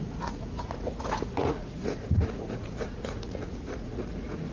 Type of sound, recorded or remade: remade